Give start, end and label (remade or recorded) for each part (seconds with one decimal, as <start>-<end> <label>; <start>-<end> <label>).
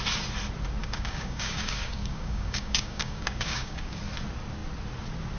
0.0-0.8 recorded; 0.8-4.0 remade; 4.0-5.4 recorded